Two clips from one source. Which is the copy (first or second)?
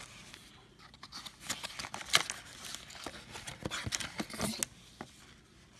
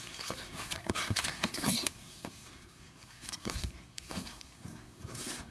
second